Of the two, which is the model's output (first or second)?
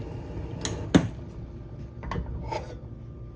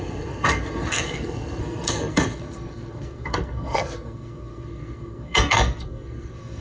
second